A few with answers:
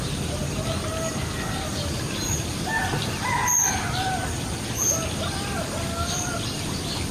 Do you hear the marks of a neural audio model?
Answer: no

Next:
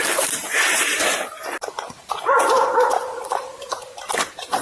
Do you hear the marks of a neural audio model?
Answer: yes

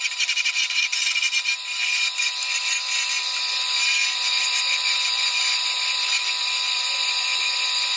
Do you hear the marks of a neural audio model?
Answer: yes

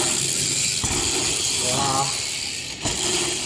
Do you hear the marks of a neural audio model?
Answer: no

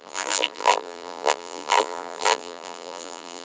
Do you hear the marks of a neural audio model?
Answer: yes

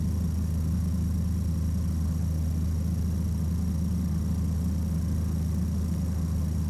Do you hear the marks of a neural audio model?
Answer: no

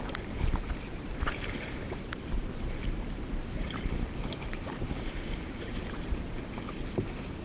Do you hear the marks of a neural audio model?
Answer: yes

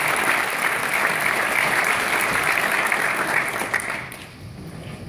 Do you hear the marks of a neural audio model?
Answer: no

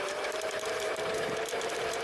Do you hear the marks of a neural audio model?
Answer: yes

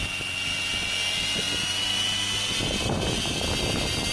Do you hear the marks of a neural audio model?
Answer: no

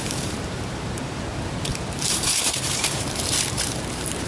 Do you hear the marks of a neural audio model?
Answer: yes